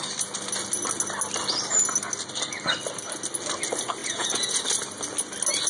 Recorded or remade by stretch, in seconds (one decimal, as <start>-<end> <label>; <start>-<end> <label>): 0.0-4.0 recorded; 4.0-4.6 remade; 4.6-5.7 recorded